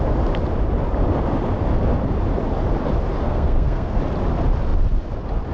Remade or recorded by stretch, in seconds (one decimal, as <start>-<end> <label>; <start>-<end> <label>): 0.0-3.2 recorded; 3.2-4.0 remade; 4.0-5.5 recorded